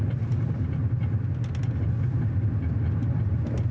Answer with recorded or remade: recorded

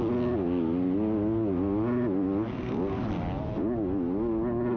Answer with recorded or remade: recorded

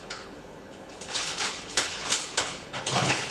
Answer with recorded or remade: remade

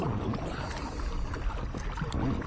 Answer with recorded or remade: recorded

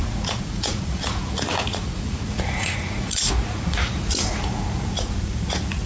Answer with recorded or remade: remade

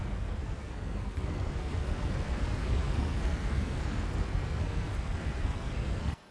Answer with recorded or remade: remade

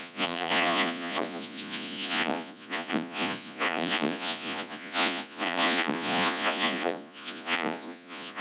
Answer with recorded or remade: remade